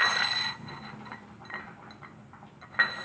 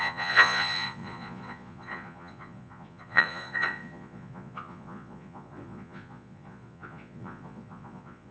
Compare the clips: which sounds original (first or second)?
first